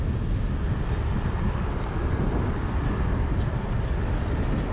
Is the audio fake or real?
real